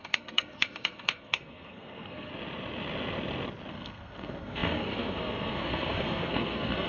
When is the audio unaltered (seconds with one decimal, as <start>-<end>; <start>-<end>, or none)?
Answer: 2.3-3.7